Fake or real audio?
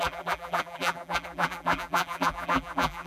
fake